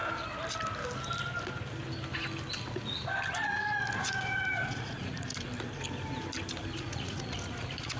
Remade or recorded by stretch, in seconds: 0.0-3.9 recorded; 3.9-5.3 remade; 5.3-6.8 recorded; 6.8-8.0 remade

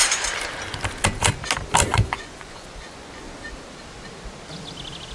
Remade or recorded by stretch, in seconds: 0.0-1.9 recorded; 1.9-3.2 remade; 3.2-5.1 recorded

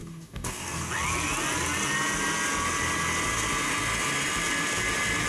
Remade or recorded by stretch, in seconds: 0.0-0.9 remade; 0.9-5.3 recorded

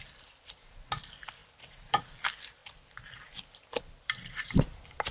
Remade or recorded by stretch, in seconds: 0.0-1.4 recorded; 1.4-2.0 remade; 2.0-2.6 recorded; 2.6-4.6 remade; 4.6-5.1 recorded